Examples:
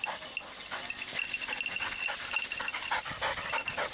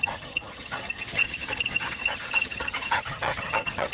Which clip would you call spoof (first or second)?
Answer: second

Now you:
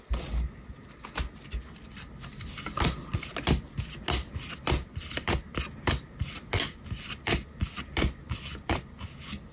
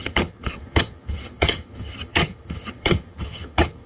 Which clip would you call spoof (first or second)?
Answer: second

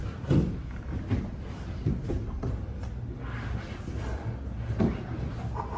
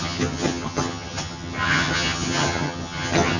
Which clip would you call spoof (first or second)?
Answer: second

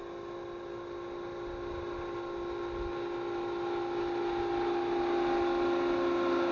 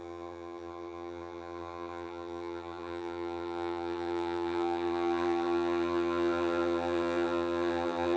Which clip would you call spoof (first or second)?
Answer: second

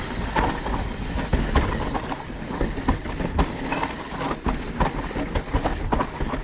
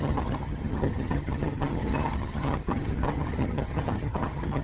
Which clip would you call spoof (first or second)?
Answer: second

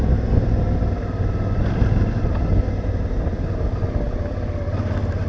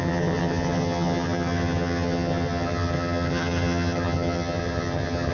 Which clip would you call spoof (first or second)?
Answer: second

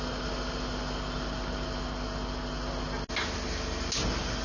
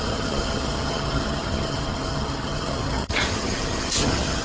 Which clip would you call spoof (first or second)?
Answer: second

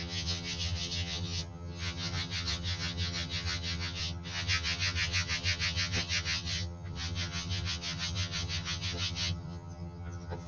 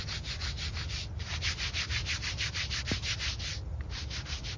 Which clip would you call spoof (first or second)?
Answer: first